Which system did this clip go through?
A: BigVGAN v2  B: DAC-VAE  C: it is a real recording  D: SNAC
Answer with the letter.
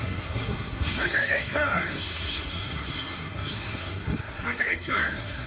D